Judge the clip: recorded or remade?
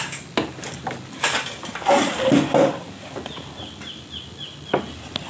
recorded